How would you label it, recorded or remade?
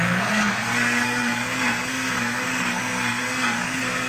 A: remade